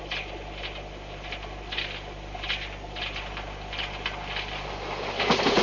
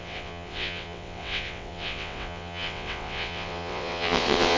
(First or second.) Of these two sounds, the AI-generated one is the second